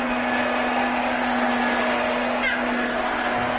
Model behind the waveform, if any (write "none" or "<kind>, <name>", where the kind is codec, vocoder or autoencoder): none